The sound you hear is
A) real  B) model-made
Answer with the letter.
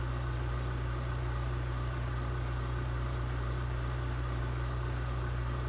B